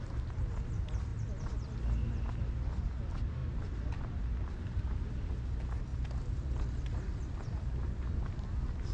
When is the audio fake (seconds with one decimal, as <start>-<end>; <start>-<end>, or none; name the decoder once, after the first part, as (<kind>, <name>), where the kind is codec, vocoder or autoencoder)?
none